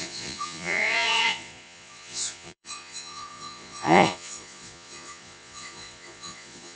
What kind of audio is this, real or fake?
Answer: fake